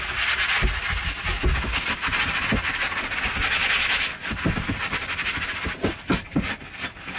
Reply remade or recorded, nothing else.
recorded